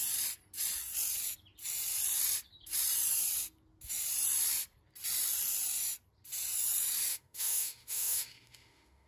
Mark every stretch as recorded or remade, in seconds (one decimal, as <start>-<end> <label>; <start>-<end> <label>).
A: 0.0-7.1 recorded; 7.1-9.1 remade